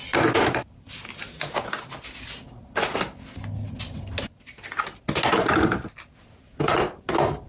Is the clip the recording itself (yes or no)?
yes